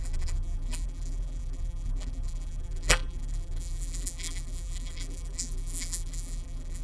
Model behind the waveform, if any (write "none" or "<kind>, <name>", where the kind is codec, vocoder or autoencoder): vocoder, BigVGAN v2